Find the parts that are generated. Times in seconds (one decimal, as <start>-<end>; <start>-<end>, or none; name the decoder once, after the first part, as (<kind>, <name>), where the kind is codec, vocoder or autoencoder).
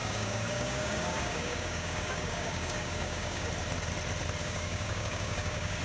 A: 0.0-3.5 (codec, DAC); 4.4-5.8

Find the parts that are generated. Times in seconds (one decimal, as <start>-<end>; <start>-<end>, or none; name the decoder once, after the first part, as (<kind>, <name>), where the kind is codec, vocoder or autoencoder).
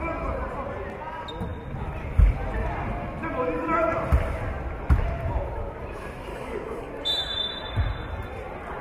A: 6.3-6.9 (codec, DAC)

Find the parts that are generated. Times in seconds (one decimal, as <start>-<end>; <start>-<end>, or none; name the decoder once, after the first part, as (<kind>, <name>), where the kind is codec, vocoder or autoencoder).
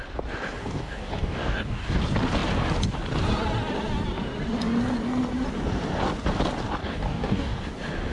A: 0.6-2.0 (codec, DAC); 6.8-7.6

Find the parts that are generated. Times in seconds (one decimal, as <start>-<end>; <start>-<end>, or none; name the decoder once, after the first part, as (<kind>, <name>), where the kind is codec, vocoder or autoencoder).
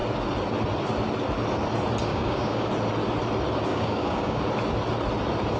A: 2.1-2.7 (codec, DAC); 3.7-4.4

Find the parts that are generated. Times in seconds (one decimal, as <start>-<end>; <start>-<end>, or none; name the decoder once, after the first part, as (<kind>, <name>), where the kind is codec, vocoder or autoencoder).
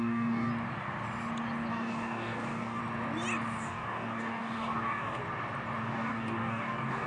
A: 0.0-0.5 (codec, DAC); 1.7-2.8; 3.6-5.2; 5.8-7.1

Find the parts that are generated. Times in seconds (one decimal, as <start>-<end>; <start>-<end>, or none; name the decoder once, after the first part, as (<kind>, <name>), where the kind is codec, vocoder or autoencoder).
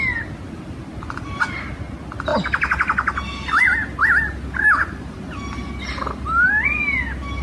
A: none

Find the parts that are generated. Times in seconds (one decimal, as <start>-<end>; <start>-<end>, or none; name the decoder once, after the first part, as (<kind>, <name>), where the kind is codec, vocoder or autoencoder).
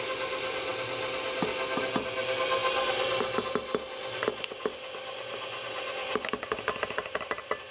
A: none